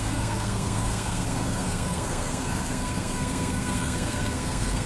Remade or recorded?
remade